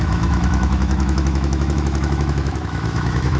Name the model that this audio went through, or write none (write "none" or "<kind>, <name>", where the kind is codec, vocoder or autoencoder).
autoencoder, DAC-VAE